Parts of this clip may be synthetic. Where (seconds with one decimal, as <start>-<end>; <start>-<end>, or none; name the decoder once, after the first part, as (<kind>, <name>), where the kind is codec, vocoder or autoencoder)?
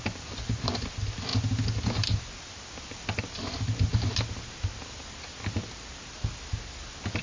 none